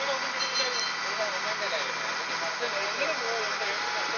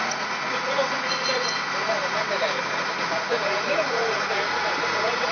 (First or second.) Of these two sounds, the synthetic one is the second